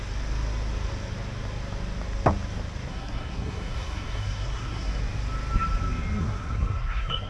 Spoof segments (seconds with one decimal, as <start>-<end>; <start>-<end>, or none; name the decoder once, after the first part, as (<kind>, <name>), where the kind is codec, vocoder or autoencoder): 2.9-5.0 (codec, SNAC); 6.2-7.3